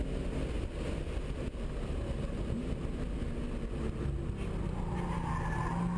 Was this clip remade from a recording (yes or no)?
no